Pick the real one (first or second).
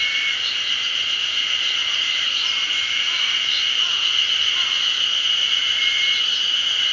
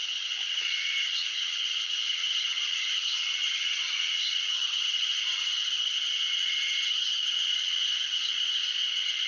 first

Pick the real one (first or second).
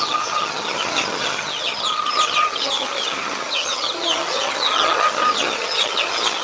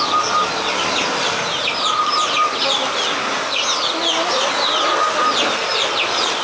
second